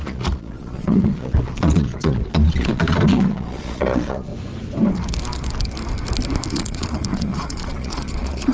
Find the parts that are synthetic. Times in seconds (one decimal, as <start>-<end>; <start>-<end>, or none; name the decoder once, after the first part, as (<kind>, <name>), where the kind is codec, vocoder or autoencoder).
0.0-4.3 (vocoder, Vocos); 6.5-8.5